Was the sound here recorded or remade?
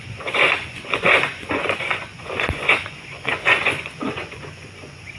remade